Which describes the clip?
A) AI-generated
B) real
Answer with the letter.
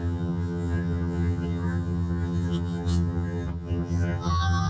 A